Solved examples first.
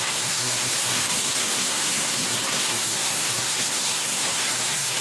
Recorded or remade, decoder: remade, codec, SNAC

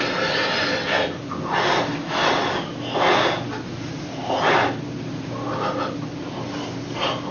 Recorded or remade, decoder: recorded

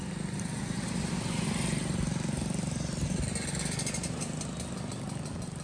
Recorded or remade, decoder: recorded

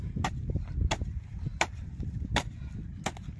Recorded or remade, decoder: recorded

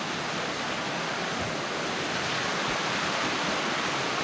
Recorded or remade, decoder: recorded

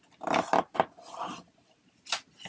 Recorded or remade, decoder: recorded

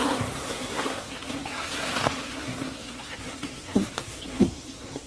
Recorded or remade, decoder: remade, codec, SNAC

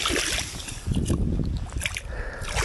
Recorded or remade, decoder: recorded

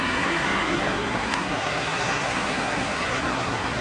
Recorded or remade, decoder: remade, codec, SNAC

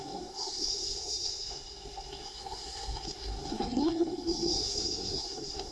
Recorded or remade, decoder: remade, codec, SNAC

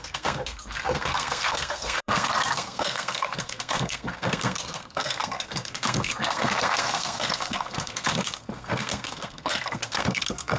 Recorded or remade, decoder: remade, codec, SNAC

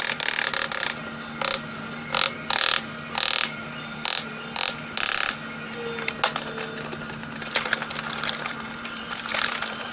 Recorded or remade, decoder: recorded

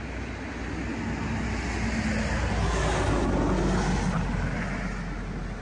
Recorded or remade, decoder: recorded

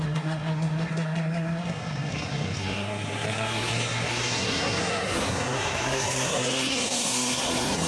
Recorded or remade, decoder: remade, codec, SNAC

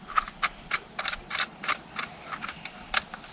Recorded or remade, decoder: recorded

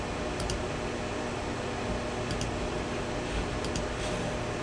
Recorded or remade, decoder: recorded